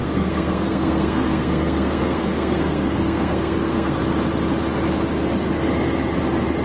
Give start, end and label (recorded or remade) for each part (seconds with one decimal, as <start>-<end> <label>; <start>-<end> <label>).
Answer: 0.0-4.0 remade; 4.0-6.6 recorded